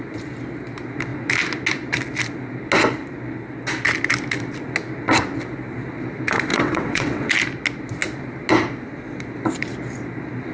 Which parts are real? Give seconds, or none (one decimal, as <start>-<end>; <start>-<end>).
0.0-6.5; 7.3-10.5

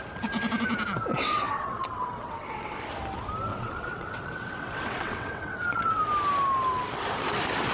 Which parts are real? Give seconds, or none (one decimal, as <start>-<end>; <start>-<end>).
0.0-1.1; 2.8-3.5; 6.0-7.7

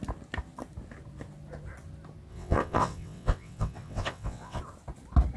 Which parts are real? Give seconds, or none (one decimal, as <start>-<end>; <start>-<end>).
0.0-2.3; 4.6-5.4

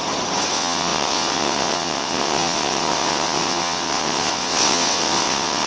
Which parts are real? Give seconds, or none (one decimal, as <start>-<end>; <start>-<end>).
0.0-0.5